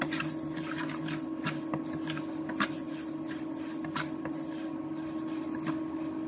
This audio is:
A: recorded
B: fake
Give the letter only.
A